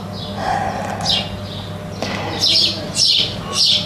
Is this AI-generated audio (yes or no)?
no